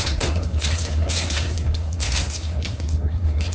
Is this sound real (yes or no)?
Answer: no